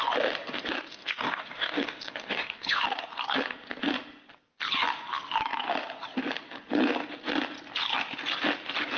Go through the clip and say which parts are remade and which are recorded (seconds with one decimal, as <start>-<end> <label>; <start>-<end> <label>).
0.0-0.9 recorded; 0.9-2.8 remade; 2.8-9.0 recorded